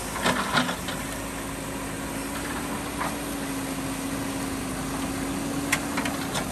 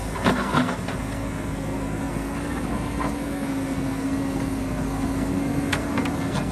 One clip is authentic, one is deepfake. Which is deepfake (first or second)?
second